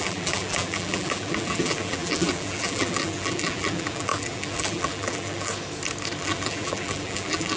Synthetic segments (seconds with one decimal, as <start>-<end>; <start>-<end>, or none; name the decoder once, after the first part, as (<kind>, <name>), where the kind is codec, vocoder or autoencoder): 0.0-5.5 (vocoder, BigVGAN v2); 6.2-7.6